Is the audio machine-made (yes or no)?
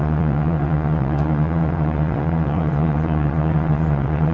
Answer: yes